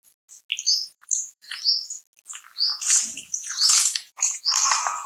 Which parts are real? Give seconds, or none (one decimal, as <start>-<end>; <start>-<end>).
0.0-0.7; 1.6-2.7; 4.4-5.1